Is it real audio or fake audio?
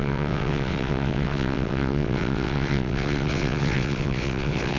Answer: fake